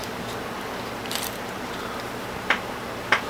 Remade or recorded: remade